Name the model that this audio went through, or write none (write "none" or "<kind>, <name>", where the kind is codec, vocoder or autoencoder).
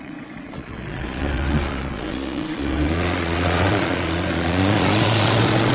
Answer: vocoder, Vocos